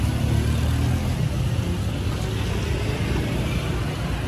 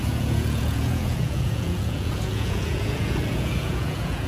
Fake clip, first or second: second